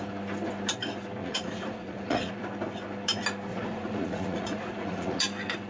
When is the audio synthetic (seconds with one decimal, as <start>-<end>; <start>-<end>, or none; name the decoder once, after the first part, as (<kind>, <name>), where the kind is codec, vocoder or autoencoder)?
1.2-2.3 (vocoder, Vocos); 3.5-5.2